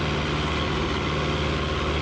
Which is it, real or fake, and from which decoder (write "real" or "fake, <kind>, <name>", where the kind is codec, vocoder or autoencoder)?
real